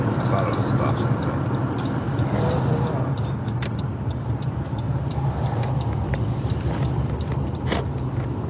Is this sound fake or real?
real